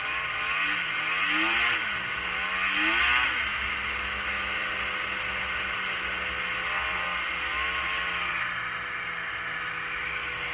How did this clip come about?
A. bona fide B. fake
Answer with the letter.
A